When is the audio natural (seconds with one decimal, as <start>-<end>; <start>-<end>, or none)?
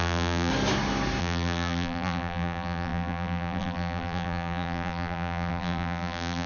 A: 0.5-1.2